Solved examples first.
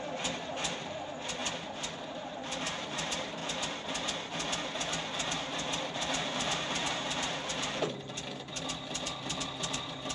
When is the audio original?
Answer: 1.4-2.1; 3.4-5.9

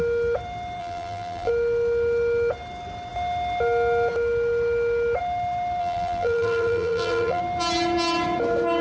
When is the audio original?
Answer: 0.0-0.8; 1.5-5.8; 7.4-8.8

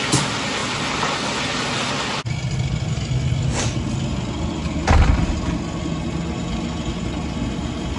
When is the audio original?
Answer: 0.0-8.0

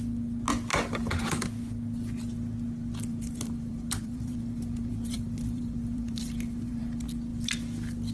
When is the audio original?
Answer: 0.0-0.7; 1.3-3.1; 6.8-8.1